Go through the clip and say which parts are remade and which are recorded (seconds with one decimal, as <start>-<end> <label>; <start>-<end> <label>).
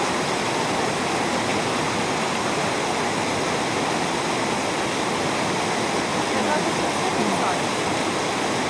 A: 0.0-8.7 recorded